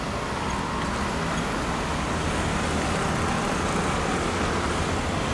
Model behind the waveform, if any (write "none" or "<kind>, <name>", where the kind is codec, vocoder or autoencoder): none